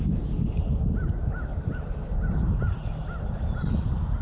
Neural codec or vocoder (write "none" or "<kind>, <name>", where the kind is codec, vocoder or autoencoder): none